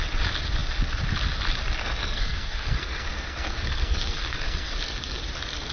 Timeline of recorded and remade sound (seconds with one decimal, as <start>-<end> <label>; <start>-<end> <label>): 0.0-1.8 recorded; 1.8-5.2 remade; 5.2-5.7 recorded